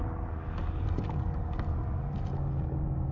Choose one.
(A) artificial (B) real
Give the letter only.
B